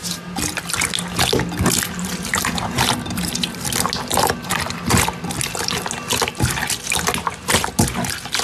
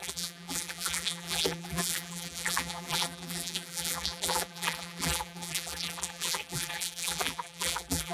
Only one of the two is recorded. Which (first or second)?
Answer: first